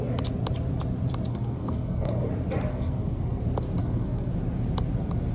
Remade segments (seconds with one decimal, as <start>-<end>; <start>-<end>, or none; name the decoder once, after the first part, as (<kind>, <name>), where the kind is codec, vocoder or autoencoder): 1.3-2.3 (codec, SNAC); 2.7-3.4; 3.8-4.3